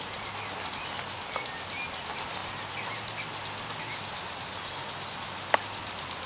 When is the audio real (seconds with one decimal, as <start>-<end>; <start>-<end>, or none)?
0.0-6.3